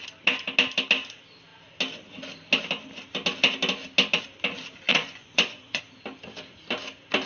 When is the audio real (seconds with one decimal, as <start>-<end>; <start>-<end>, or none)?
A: 0.0-4.9; 5.8-7.3